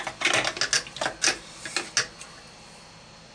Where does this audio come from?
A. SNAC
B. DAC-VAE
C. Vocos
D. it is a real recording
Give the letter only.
D